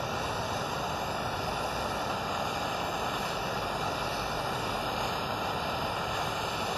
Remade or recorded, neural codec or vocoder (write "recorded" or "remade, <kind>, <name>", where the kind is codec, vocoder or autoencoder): recorded